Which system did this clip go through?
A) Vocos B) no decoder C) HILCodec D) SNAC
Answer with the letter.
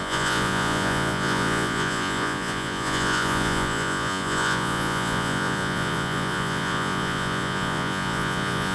A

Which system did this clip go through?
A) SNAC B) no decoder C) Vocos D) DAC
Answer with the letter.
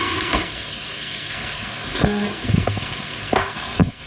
A